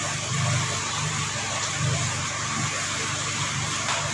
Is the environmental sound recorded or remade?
remade